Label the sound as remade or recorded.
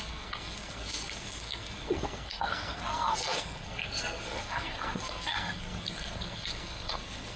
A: remade